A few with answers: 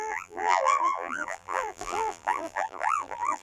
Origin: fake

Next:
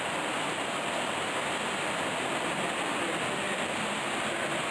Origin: real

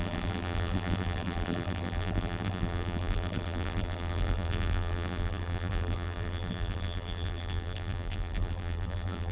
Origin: fake